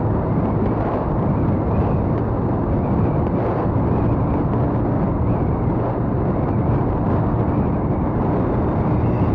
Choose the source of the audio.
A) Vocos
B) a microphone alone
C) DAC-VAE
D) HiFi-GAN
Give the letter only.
B